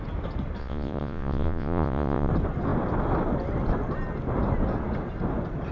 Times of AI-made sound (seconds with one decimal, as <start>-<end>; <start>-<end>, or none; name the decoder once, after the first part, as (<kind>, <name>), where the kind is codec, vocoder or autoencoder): 0.6-2.3 (vocoder, Vocos)

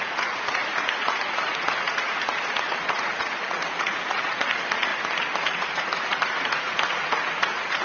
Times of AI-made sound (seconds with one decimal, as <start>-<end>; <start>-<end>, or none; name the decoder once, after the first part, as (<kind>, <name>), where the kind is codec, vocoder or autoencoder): 0.0-4.9 (vocoder, Vocos); 5.4-7.8